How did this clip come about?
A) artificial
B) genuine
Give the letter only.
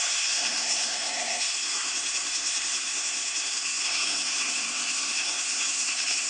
A